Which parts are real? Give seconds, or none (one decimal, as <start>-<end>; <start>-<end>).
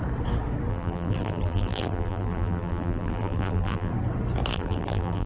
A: 0.0-0.7; 3.9-4.5